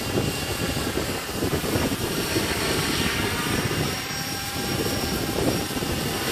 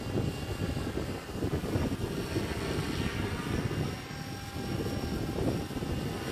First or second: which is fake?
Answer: first